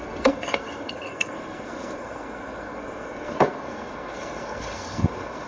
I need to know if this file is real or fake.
fake